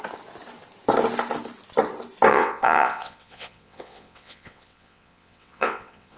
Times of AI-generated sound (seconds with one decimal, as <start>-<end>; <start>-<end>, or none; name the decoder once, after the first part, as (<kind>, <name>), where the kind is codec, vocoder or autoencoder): 2.3-6.2 (vocoder, WaveNeXt)